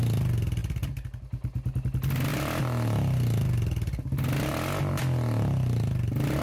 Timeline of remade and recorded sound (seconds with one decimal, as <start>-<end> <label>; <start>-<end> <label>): 0.0-6.4 recorded